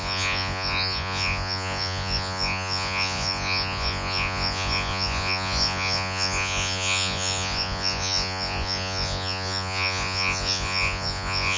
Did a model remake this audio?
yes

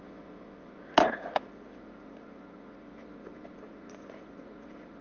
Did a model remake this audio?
yes